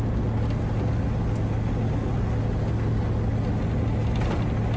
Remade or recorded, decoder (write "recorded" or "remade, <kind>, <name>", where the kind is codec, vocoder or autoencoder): recorded